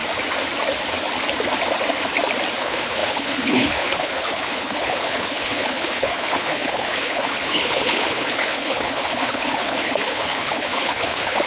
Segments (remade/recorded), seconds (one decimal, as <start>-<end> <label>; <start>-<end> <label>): 0.0-2.6 recorded; 2.6-11.5 remade